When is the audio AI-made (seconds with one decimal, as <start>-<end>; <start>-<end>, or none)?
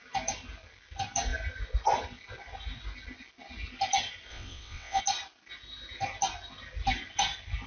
4.3-5.0